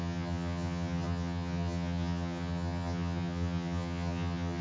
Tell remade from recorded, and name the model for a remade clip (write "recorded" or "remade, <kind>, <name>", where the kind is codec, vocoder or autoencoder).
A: remade, vocoder, HiFi-GAN